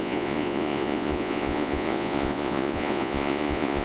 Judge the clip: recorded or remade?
remade